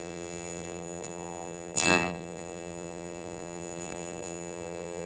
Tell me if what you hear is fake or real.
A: fake